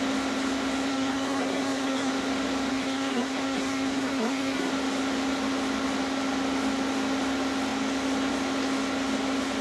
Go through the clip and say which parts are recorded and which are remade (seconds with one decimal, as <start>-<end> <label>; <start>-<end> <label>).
0.0-0.9 recorded; 0.9-2.1 remade; 2.1-2.7 recorded; 2.7-4.7 remade; 4.7-9.6 recorded